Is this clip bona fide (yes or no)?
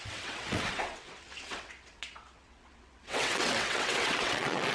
no